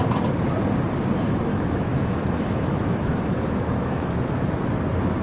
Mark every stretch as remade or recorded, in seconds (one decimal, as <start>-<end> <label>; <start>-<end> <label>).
0.0-1.5 recorded; 1.5-4.4 remade; 4.4-5.2 recorded